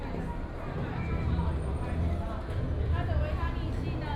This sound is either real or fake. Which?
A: real